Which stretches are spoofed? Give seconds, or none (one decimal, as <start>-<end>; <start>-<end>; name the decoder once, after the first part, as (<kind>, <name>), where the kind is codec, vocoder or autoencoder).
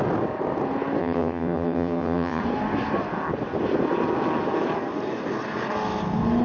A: 1.0-2.4 (vocoder, HiFi-GAN)